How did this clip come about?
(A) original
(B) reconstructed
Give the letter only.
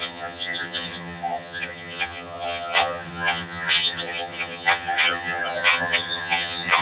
B